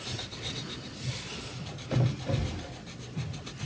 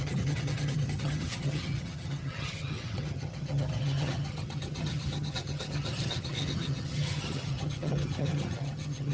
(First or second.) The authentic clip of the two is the first